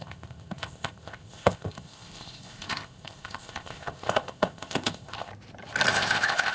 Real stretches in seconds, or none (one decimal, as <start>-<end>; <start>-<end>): 5.3-5.9